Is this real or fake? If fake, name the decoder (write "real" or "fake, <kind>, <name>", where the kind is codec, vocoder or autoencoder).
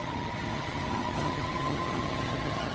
fake, vocoder, HiFi-GAN